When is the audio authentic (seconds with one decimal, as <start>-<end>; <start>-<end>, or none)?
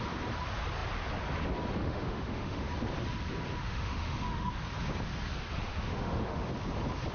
0.0-1.8; 2.7-3.6; 4.5-5.7; 6.5-7.1